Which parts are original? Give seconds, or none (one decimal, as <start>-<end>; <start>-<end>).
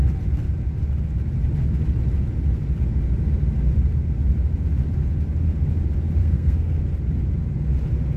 0.0-6.2; 6.8-8.2